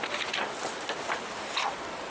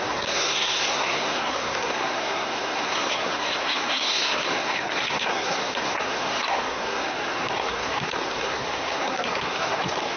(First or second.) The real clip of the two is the first